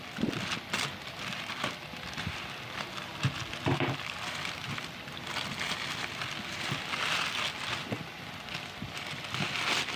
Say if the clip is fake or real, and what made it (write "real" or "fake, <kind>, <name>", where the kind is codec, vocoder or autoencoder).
real